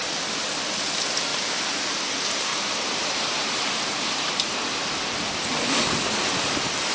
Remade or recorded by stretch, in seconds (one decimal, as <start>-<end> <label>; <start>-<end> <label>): 0.0-1.3 recorded; 1.3-2.1 remade; 2.1-2.5 recorded; 2.5-4.3 remade; 4.3-6.9 recorded